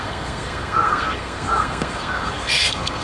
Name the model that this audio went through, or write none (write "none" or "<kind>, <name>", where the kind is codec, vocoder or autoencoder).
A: codec, SNAC